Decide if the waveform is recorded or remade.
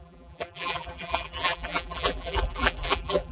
remade